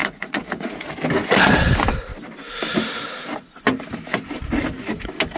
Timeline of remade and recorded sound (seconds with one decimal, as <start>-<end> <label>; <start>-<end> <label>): 0.0-0.9 remade; 0.9-5.4 recorded